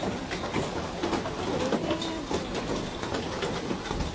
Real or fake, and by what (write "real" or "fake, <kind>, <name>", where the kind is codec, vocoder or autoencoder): real